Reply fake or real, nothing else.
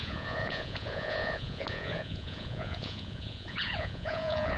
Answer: fake